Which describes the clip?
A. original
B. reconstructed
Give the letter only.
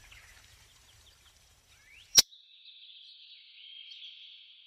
B